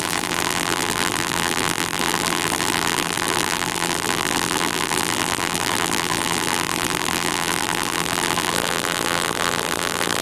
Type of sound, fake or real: fake